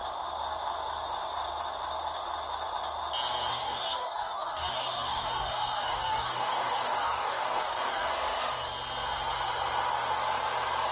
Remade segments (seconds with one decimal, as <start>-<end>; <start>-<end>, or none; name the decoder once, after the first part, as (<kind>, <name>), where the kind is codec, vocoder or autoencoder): 3.5-8.1 (codec, DAC)